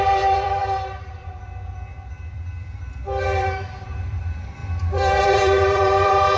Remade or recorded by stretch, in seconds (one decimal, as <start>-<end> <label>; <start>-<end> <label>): 0.0-6.4 remade